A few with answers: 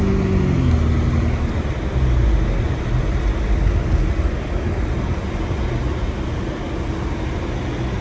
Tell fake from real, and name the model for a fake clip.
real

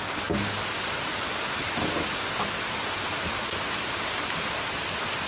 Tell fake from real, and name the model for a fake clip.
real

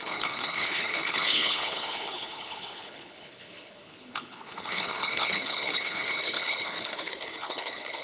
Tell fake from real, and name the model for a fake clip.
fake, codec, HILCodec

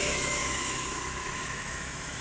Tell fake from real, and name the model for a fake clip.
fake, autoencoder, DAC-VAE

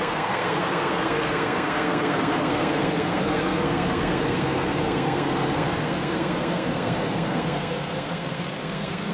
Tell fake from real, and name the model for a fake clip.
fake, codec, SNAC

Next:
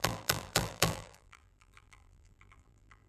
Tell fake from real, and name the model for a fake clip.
fake, vocoder, BigVGAN v2